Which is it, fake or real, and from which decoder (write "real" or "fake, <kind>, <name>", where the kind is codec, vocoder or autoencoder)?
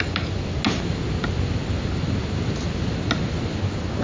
real